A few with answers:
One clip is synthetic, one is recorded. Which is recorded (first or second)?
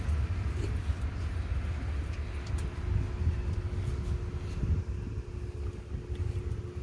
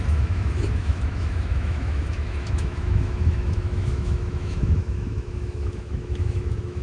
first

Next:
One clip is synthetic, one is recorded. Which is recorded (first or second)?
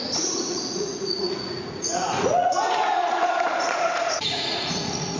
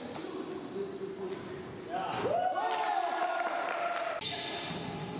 second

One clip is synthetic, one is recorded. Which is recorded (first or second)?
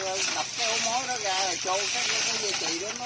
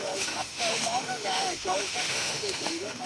first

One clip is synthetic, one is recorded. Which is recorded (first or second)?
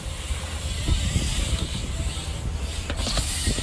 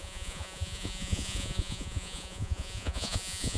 first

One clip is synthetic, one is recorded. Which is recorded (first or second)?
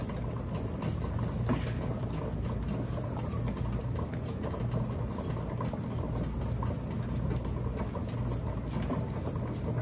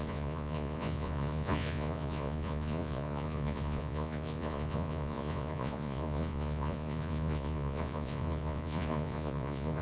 first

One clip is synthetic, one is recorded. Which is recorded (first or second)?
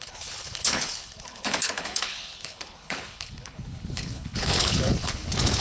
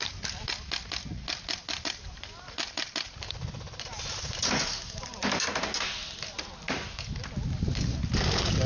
second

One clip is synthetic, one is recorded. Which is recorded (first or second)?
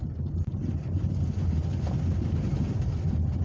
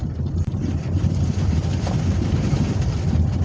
first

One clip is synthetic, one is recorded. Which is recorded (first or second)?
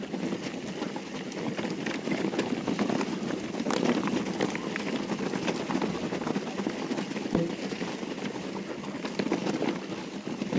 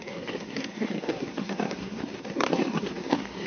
first